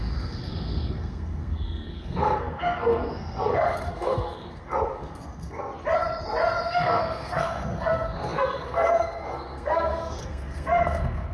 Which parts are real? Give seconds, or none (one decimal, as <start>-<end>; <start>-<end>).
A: 5.7-6.7